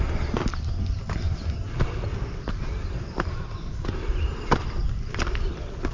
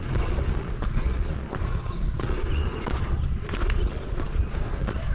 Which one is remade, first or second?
second